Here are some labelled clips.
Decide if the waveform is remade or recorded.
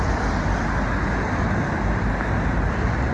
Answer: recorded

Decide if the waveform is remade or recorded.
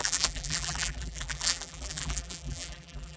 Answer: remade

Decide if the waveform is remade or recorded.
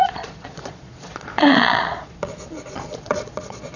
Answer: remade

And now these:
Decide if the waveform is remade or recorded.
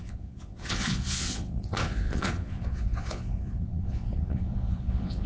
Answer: remade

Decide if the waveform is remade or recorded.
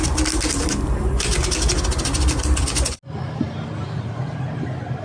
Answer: recorded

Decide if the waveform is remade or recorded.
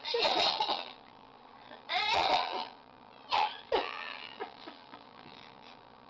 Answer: remade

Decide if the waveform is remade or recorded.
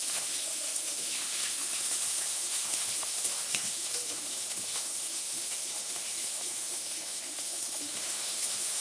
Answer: remade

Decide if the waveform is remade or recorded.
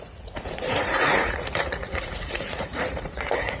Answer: remade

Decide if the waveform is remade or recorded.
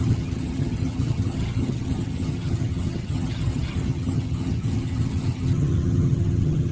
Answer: remade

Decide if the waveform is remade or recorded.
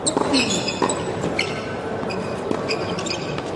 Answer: recorded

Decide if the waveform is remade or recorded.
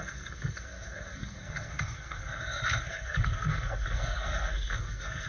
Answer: remade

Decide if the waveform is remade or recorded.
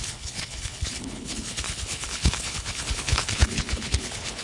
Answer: remade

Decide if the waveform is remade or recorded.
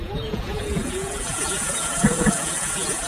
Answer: remade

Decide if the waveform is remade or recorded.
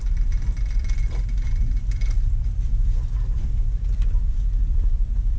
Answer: remade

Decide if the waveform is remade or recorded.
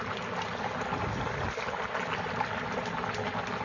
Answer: recorded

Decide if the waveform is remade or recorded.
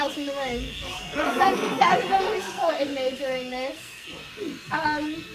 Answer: remade